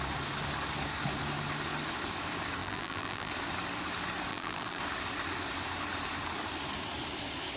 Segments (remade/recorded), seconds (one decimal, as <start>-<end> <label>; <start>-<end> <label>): 0.0-2.6 recorded; 2.6-3.3 remade; 3.3-4.3 recorded; 4.3-4.8 remade; 4.8-7.6 recorded